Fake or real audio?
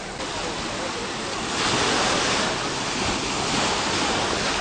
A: real